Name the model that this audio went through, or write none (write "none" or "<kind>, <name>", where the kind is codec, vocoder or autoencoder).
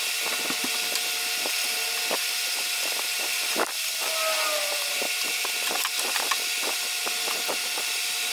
none